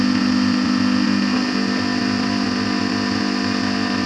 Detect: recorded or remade recorded